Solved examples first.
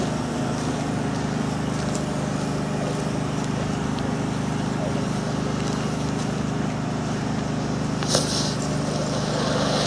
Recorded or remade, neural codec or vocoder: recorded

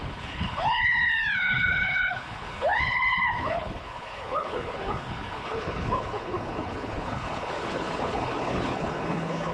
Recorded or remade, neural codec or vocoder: remade, codec, HILCodec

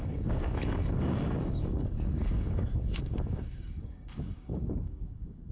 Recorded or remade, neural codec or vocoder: remade, codec, DAC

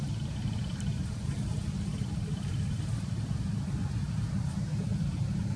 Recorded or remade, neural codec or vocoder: remade, vocoder, BigVGAN v2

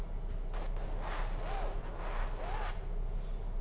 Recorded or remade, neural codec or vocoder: recorded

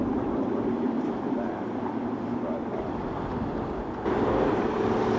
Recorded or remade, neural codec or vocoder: remade, vocoder, BigVGAN v2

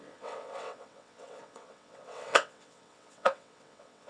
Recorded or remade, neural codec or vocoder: remade, vocoder, WaveNeXt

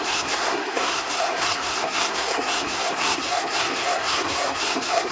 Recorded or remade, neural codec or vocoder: remade, codec, SNAC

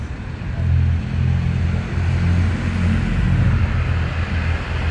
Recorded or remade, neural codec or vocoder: recorded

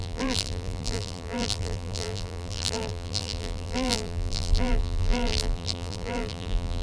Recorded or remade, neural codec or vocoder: remade, vocoder, BigVGAN v2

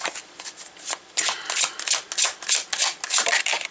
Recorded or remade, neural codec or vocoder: recorded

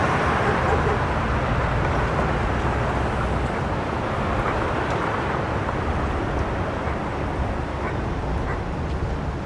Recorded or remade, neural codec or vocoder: recorded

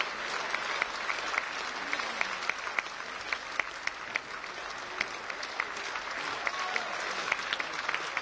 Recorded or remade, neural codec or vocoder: recorded